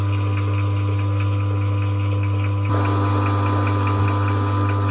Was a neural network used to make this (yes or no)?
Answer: no